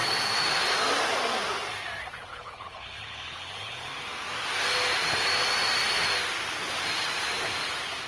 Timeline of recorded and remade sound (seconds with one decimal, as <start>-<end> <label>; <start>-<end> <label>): 0.0-2.3 recorded; 2.3-3.9 remade; 3.9-8.1 recorded